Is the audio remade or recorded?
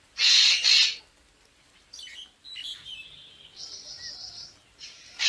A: recorded